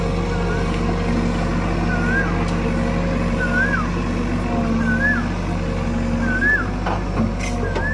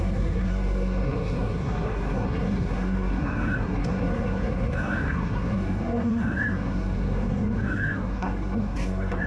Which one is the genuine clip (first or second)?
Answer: first